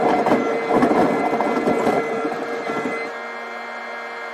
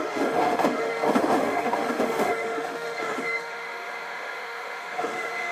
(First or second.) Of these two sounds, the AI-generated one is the second